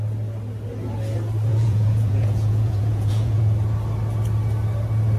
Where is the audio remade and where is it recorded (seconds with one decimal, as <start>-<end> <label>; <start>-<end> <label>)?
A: 0.0-1.5 recorded; 1.5-3.4 remade; 3.4-5.2 recorded